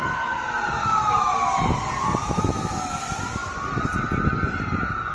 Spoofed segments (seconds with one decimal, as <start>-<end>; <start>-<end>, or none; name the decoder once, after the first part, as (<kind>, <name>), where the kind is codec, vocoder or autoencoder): 0.8-1.6 (autoencoder, DAC-VAE); 2.2-2.9